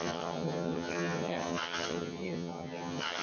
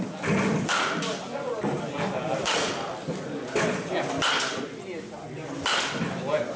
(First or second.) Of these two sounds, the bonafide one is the second